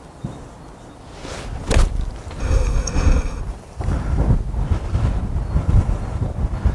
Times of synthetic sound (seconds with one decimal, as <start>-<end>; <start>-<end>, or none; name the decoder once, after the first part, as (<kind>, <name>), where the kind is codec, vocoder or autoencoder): 2.4-3.4 (codec, SNAC)

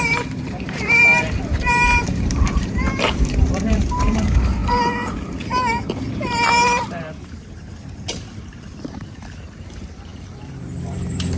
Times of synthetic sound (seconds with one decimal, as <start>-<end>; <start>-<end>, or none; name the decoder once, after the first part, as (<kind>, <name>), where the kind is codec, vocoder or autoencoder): 0.0-4.6 (vocoder, BigVGAN v2); 6.1-11.4

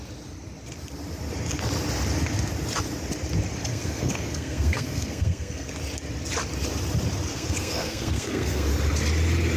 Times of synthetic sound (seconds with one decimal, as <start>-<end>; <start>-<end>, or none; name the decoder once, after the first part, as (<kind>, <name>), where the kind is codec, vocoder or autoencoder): 3.7-5.7 (codec, SNAC); 7.3-8.7

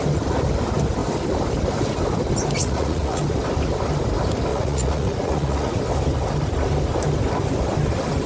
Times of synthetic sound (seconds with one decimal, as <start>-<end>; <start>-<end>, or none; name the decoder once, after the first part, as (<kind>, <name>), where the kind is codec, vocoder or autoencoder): 2.6-3.2 (vocoder, Vocos); 4.5-5.8

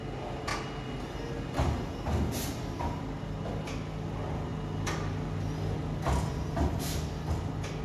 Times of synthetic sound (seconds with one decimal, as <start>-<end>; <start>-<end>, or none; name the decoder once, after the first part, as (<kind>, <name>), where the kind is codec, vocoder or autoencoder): none

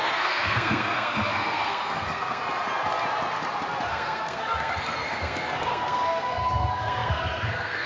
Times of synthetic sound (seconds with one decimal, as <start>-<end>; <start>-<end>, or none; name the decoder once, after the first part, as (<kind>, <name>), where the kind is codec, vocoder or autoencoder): 0.0-2.4 (codec, SNAC); 3.9-7.9

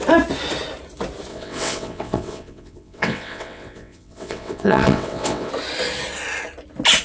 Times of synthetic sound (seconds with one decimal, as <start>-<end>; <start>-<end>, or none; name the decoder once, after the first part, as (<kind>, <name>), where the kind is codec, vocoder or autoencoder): 1.3-5.5 (vocoder, WaveNeXt)